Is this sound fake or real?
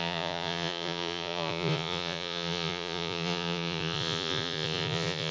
fake